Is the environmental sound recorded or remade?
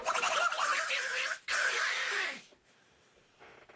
recorded